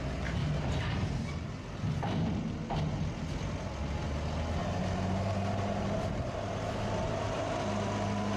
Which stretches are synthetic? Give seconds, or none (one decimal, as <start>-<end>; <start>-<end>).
0.4-0.9; 4.6-7.4